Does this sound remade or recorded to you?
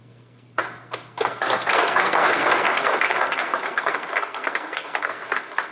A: remade